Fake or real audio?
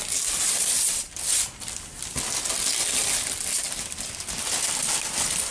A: real